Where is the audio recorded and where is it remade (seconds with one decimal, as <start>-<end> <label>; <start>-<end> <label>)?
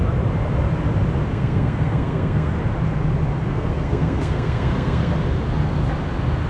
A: 0.0-1.3 recorded; 1.3-2.6 remade; 2.6-3.5 recorded; 3.5-5.1 remade; 5.1-6.5 recorded